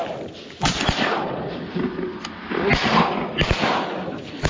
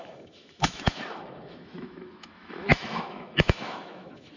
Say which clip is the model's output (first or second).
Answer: second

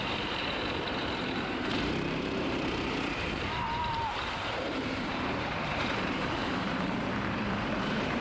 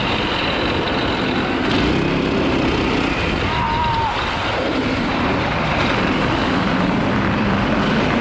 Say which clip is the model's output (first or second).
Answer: first